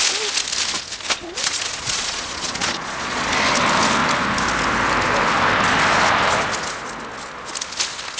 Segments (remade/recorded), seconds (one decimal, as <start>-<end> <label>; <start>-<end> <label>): 0.0-1.2 recorded; 1.2-3.3 remade; 3.3-8.2 recorded